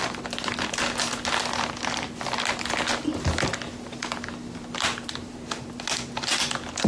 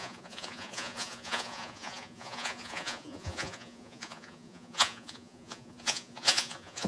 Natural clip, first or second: first